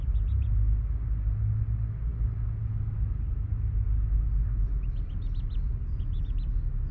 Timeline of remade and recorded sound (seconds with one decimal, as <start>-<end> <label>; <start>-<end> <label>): 0.0-6.9 recorded